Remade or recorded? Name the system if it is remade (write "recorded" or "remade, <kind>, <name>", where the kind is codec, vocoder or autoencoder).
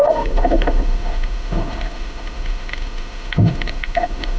remade, autoencoder, DAC-VAE